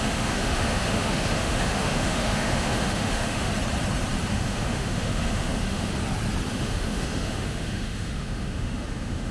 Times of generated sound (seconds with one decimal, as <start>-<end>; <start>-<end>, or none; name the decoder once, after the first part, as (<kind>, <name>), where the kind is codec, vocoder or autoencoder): 0.0-3.5 (autoencoder, DAC-VAE); 4.3-5.9; 6.5-9.3